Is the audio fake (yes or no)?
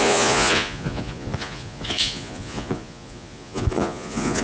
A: yes